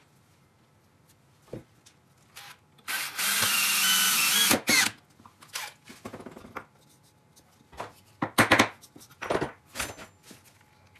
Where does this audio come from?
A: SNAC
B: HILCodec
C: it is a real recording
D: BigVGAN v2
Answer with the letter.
C